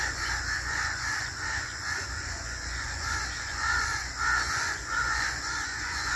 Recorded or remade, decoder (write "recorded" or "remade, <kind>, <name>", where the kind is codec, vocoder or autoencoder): remade, vocoder, Vocos